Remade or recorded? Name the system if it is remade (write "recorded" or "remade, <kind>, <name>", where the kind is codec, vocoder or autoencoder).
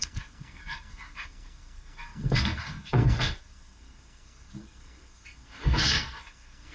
remade, codec, SNAC